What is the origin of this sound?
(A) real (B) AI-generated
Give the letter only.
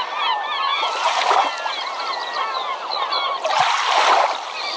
A